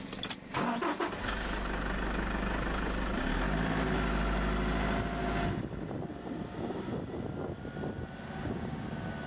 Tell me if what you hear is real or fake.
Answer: real